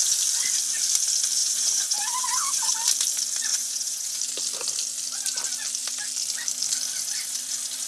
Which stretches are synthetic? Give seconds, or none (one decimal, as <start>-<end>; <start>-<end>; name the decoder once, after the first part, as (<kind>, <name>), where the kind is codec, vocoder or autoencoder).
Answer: 1.4-2.7 (vocoder, Vocos); 3.5-4.2